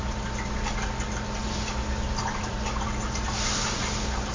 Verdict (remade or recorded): recorded